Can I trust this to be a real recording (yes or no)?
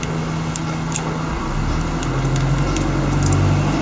yes